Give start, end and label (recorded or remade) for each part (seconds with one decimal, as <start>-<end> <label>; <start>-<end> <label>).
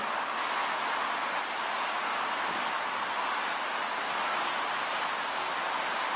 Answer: 0.0-3.4 recorded; 3.4-4.0 remade; 4.0-6.2 recorded